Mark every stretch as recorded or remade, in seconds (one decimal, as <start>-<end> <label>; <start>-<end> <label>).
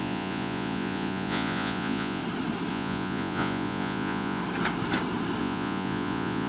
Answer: 0.0-2.2 remade; 2.2-2.7 recorded; 2.7-4.4 remade; 4.4-5.4 recorded; 5.4-6.5 remade